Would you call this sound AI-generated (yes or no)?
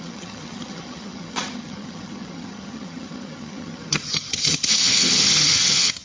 yes